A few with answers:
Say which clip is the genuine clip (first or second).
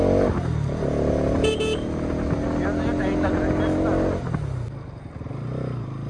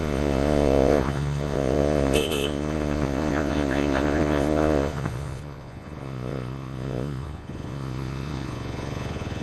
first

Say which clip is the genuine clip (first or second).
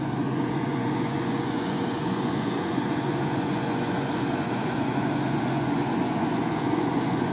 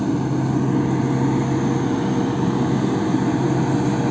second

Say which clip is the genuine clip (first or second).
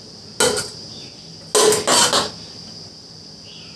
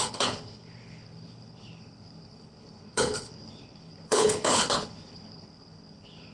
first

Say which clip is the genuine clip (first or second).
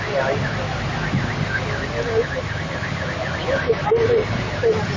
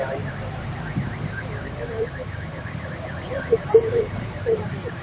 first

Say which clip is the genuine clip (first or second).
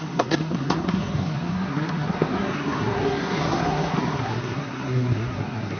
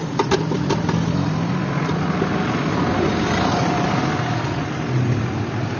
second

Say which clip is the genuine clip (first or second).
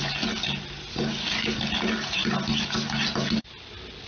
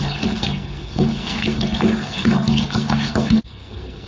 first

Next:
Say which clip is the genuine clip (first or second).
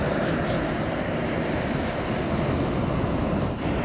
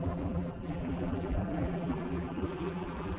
first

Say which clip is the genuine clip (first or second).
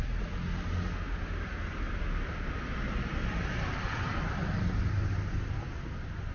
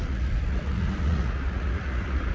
first